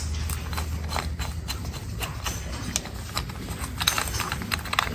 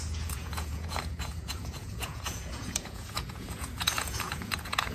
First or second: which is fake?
second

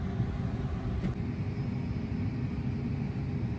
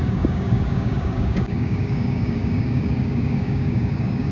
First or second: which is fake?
second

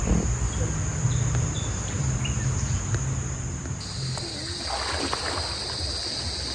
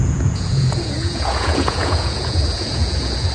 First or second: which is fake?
second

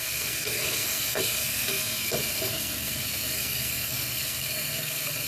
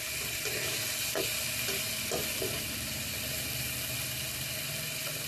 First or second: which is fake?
first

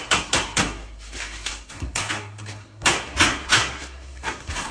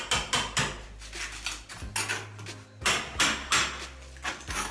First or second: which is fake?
first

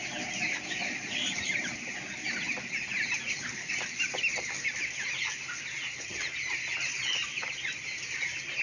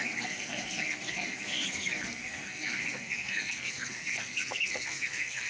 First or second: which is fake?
second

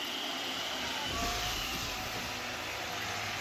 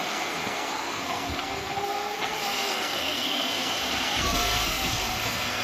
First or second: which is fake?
second